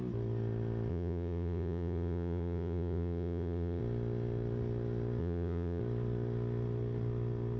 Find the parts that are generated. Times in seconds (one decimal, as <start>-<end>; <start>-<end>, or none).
0.9-3.8; 5.2-5.8